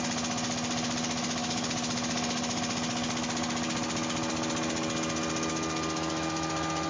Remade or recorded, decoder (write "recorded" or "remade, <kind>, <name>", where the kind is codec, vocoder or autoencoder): recorded